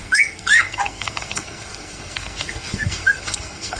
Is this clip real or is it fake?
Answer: fake